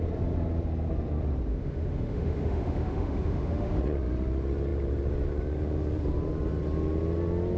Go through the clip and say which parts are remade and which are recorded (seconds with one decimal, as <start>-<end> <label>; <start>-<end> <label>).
0.0-1.5 recorded; 1.5-3.8 remade; 3.8-7.6 recorded